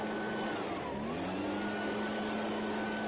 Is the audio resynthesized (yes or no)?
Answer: no